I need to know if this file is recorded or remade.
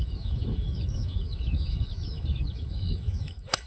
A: remade